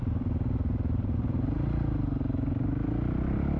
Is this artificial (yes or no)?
no